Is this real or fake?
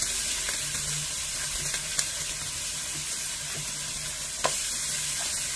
real